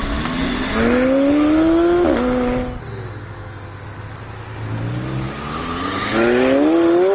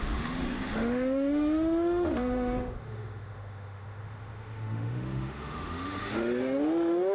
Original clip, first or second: first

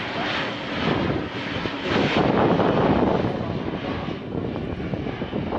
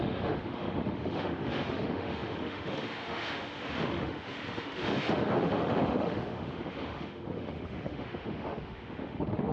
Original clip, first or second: first